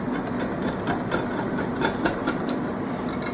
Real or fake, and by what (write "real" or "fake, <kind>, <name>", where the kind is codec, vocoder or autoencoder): real